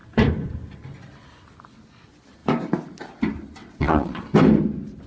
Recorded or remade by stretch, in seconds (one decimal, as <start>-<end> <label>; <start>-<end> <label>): 0.0-3.6 recorded; 3.6-4.2 remade; 4.2-5.1 recorded